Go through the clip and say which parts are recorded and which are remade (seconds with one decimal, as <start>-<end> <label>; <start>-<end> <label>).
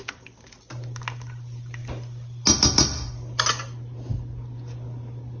0.0-5.4 recorded